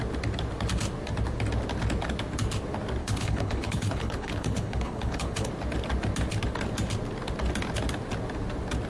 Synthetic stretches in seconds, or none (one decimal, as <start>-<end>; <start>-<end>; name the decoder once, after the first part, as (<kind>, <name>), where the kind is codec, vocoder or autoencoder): 3.0-5.5 (codec, HILCodec)